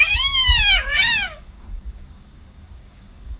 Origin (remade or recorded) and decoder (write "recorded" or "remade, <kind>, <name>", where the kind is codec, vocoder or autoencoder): remade, codec, DAC